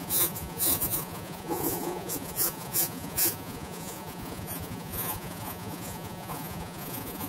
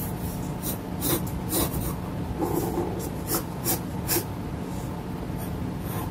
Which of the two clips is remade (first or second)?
first